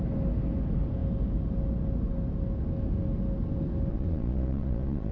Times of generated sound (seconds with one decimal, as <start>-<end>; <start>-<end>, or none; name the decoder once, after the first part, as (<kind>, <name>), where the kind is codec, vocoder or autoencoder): 3.9-5.1 (vocoder, Vocos)